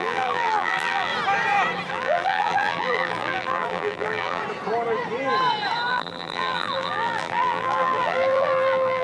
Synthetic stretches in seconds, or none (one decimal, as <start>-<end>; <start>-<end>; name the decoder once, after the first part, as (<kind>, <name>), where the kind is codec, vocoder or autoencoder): 0.0-1.1 (vocoder, BigVGAN v2); 1.9-4.4; 5.9-9.0